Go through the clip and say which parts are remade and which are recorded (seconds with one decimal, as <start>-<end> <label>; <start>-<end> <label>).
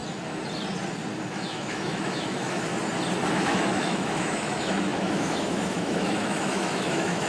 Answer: 0.0-1.3 recorded; 1.3-2.7 remade; 2.7-3.3 recorded; 3.3-7.3 remade